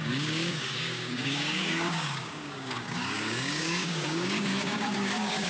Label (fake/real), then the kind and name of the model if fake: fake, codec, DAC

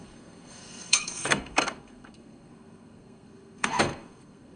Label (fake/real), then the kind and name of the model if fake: fake, codec, SNAC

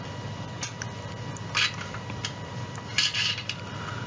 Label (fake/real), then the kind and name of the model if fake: fake, vocoder, BigVGAN v2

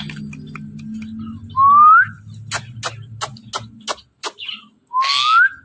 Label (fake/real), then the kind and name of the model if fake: real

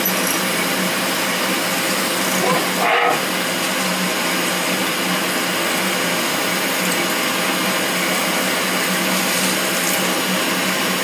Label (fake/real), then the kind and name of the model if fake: real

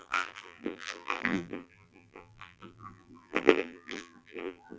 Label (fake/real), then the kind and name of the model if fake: fake, vocoder, BigVGAN v2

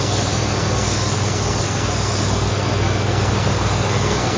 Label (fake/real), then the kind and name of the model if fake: fake, codec, SNAC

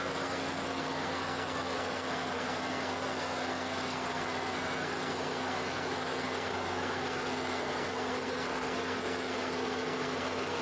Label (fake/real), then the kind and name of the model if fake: fake, codec, SNAC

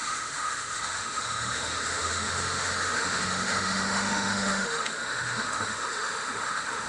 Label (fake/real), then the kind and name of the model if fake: fake, autoencoder, DAC-VAE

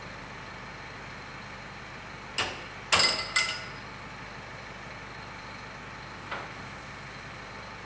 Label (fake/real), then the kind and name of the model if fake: real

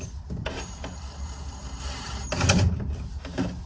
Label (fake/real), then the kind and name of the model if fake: fake, vocoder, BigVGAN v2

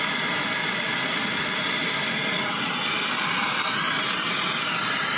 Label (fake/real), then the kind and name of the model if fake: real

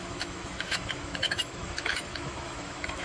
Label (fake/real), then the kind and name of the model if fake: fake, autoencoder, DAC-VAE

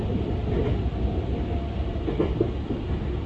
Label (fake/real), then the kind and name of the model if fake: real